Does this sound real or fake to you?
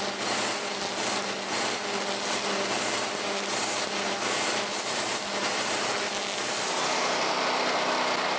real